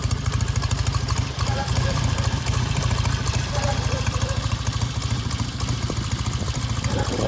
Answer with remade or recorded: remade